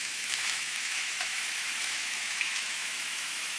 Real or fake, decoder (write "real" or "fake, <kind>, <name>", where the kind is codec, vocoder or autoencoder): fake, autoencoder, DAC-VAE